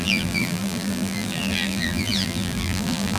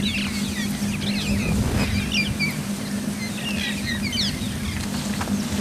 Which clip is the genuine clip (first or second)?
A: second